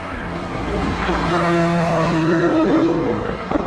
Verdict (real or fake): fake